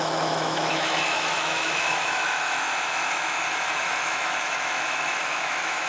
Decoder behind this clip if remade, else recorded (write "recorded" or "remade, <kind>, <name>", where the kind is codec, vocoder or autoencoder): remade, autoencoder, DAC-VAE